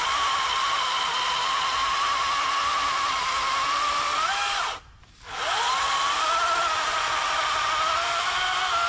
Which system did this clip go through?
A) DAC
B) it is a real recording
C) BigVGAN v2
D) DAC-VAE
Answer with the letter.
B